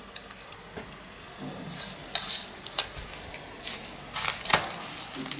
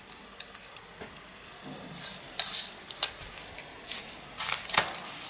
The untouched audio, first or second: first